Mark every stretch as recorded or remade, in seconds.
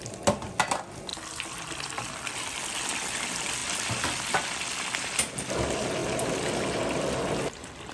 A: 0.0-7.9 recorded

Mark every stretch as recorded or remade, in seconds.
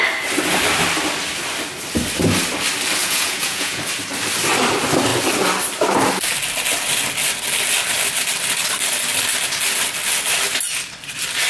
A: 0.0-3.0 recorded; 3.0-3.8 remade; 3.8-11.5 recorded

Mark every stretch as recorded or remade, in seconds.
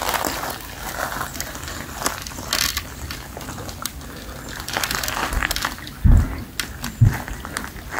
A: 0.0-8.0 recorded